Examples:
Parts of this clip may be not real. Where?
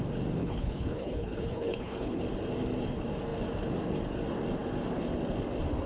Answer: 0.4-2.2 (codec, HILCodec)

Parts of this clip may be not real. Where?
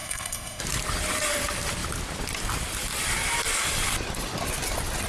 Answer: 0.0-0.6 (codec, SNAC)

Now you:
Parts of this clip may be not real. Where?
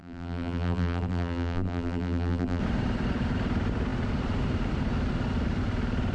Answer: 0.0-2.6 (vocoder, BigVGAN v2)